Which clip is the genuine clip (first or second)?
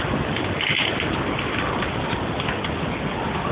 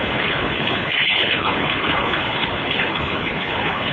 first